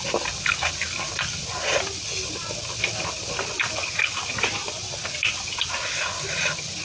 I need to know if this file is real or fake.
real